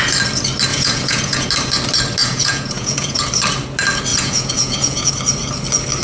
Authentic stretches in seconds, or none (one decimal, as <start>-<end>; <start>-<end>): 0.0-0.7; 1.5-2.2; 3.3-4.1; 5.1-6.0